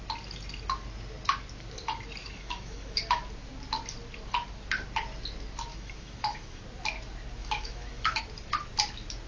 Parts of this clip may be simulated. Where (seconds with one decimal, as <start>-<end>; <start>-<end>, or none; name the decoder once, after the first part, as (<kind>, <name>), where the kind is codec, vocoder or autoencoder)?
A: 2.2-3.0 (autoencoder, DAC-VAE); 5.7-6.6; 7.4-8.2